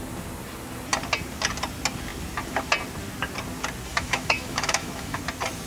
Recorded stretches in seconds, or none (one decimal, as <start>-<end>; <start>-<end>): 0.0-3.9; 5.2-5.7